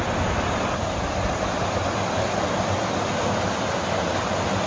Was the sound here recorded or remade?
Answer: recorded